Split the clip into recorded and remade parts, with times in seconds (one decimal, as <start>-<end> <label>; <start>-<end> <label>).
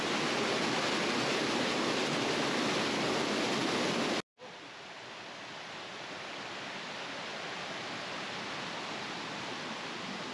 0.0-10.3 recorded